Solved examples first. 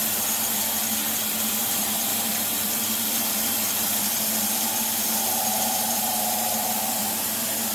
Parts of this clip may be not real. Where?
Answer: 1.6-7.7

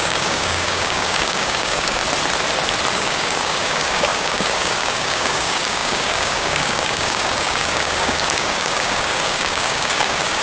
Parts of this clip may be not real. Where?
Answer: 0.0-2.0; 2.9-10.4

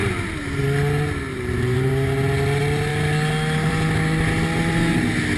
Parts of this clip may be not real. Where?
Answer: 0.0-0.6; 1.3-1.9

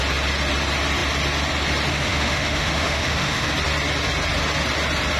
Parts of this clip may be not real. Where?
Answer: 1.9-3.5

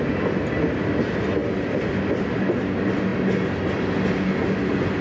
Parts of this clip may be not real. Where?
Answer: none

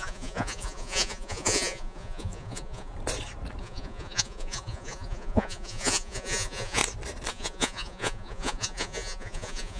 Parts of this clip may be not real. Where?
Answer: 0.0-2.9; 3.6-6.8; 7.3-9.8

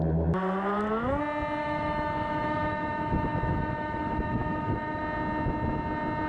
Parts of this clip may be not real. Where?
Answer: 1.6-5.0